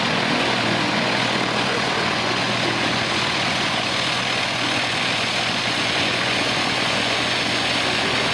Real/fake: fake